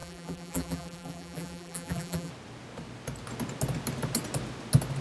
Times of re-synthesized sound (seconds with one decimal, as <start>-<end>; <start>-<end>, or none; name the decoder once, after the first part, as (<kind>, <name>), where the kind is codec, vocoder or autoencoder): 0.0-2.3 (vocoder, BigVGAN v2)